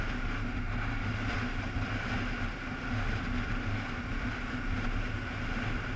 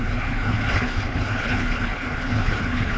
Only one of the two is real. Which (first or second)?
first